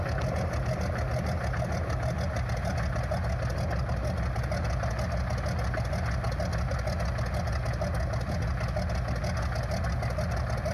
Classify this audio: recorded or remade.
recorded